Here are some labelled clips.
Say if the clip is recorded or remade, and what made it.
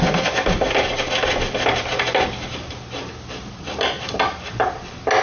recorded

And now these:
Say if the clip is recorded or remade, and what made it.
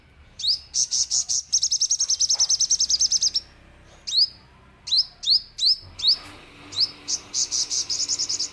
recorded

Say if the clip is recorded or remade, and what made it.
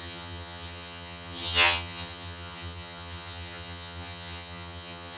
remade, vocoder, HiFi-GAN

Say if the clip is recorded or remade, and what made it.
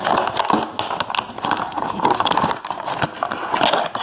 recorded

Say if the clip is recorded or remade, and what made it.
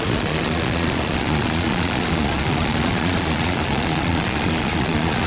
remade, vocoder, Vocos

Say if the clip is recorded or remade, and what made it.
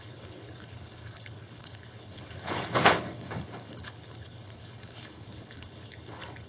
remade, codec, HILCodec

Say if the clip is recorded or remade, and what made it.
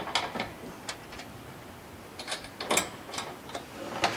recorded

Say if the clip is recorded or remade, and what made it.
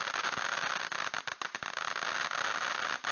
recorded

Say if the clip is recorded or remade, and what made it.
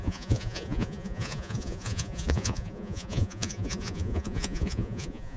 remade, vocoder, Vocos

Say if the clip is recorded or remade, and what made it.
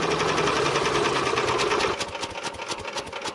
recorded